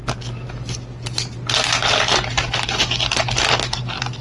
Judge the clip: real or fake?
fake